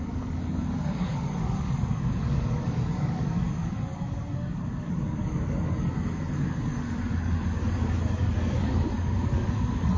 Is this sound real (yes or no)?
no